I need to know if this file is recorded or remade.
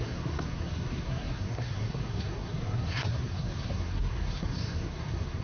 remade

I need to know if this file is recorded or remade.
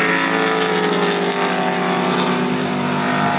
recorded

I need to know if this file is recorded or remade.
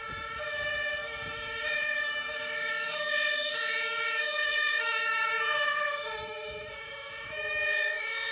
remade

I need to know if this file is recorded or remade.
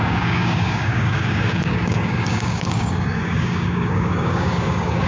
remade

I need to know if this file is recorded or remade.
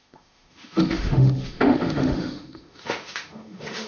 remade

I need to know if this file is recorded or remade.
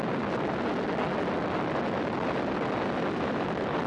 recorded